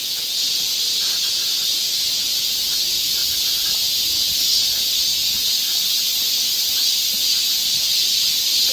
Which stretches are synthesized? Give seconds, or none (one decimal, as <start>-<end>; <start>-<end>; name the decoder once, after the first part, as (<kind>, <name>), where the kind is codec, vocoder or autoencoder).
0.0-7.6 (vocoder, Vocos)